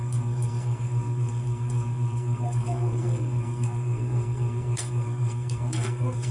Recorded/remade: remade